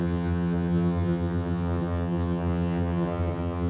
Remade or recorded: remade